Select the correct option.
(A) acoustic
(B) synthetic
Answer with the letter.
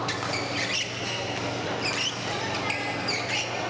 A